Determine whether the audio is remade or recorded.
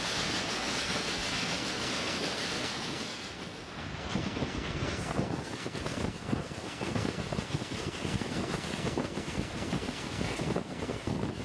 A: remade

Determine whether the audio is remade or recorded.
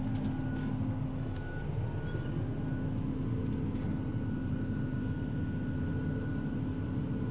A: recorded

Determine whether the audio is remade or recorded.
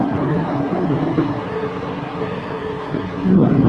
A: remade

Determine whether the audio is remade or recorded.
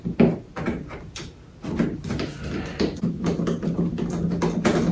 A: recorded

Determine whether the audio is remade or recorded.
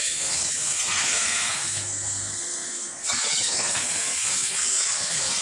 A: remade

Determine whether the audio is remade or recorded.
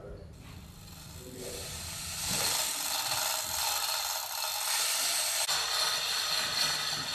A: recorded